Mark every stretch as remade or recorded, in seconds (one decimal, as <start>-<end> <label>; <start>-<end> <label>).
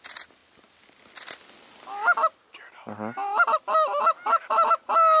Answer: 0.0-5.2 recorded